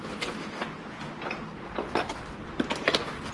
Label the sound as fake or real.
real